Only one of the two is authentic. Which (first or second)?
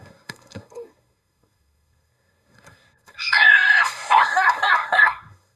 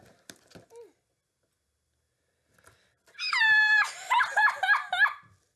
second